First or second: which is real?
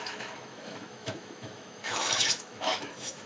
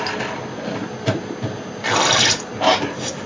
second